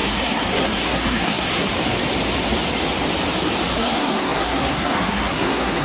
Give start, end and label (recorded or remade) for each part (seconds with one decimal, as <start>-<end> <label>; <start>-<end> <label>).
0.0-1.7 remade; 1.7-3.7 recorded; 3.7-5.8 remade